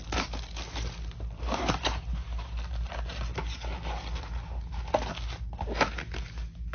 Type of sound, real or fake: real